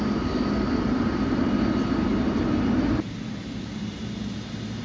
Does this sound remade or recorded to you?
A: recorded